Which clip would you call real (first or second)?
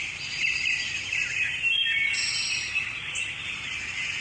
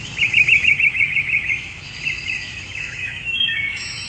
first